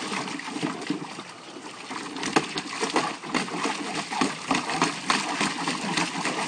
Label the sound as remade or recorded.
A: recorded